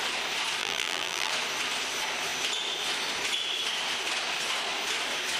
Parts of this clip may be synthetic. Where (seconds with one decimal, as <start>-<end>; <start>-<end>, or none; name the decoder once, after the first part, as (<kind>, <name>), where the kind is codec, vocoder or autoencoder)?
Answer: 0.6-1.3 (vocoder, BigVGAN v2)